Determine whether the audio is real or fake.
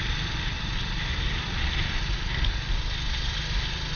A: real